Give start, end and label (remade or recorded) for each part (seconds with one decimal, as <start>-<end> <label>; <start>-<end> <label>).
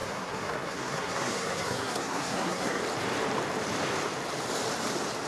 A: 0.0-2.8 remade; 2.8-5.3 recorded